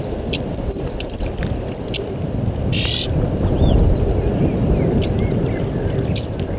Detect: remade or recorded recorded